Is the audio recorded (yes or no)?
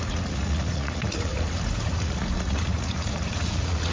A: no